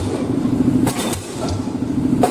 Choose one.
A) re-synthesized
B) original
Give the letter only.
A